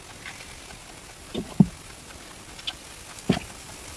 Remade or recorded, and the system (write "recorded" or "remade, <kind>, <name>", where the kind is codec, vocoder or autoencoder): recorded